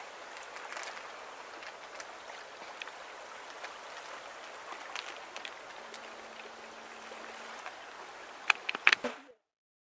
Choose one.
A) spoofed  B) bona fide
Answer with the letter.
B